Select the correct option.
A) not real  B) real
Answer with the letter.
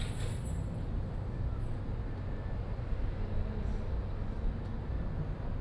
B